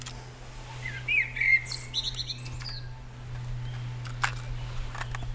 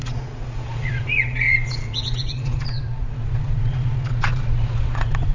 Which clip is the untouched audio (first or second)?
first